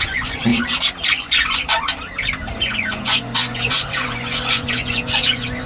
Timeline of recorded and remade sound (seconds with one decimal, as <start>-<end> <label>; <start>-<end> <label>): 0.0-0.5 remade; 0.5-1.1 recorded; 1.1-1.9 remade; 1.9-2.6 recorded; 2.6-5.7 remade